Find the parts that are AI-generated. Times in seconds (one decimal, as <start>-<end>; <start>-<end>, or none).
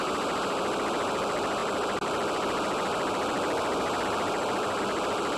0.0-1.0